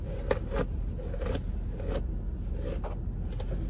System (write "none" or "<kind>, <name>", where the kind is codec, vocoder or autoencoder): none